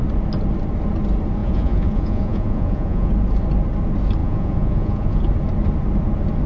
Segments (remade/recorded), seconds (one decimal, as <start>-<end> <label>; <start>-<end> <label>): 0.0-1.4 recorded; 1.4-3.1 remade; 3.1-4.2 recorded; 4.2-5.2 remade; 5.2-6.5 recorded